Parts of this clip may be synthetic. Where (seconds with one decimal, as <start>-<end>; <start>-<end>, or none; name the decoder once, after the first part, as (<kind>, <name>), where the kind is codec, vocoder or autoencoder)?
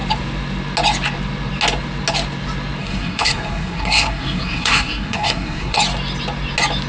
2.8-5.8 (codec, SNAC)